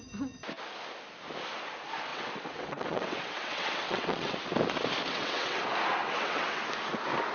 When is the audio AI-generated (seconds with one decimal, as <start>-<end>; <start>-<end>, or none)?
2.1-4.4; 5.1-5.6; 6.0-6.6